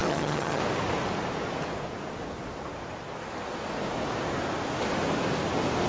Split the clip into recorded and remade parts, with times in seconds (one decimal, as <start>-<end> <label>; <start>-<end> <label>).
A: 0.0-0.6 remade; 0.6-5.9 recorded